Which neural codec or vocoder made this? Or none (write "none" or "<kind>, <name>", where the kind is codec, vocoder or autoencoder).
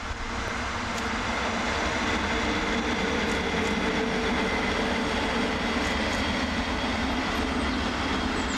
none